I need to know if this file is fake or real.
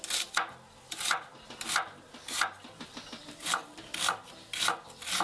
real